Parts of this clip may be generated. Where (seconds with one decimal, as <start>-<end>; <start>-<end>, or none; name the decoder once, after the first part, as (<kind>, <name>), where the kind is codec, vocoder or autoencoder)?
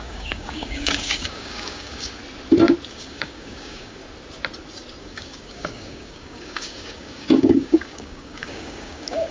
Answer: 0.0-2.2 (codec, DAC); 2.9-4.0; 5.0-9.3